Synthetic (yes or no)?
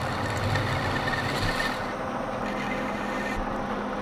no